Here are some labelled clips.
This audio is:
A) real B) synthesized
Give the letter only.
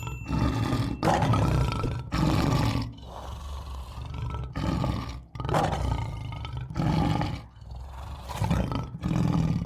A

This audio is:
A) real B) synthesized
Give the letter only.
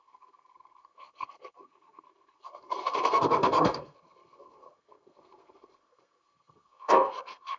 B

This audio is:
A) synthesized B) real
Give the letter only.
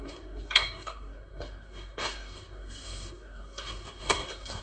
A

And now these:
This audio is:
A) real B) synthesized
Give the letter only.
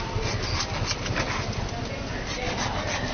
A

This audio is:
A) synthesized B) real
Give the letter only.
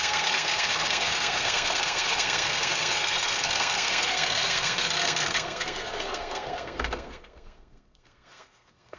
A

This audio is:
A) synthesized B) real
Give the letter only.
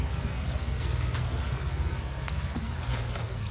A